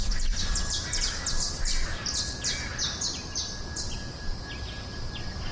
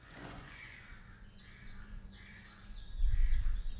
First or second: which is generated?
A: second